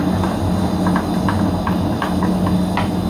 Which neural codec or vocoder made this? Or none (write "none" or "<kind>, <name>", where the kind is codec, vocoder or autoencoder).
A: none